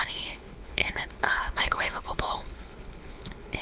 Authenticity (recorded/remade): remade